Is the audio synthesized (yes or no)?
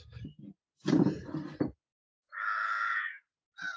no